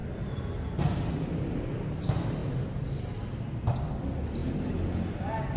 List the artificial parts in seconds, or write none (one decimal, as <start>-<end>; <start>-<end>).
0.0-1.5